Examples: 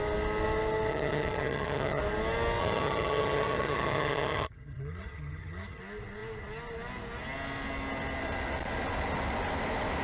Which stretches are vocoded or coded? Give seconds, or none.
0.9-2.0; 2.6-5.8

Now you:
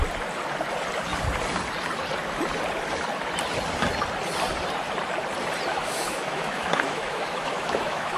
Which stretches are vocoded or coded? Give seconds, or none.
5.7-8.2

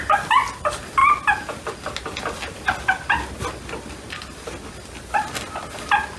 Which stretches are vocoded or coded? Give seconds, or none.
none

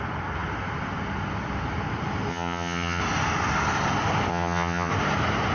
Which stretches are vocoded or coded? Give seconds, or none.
2.3-3.0; 4.3-4.9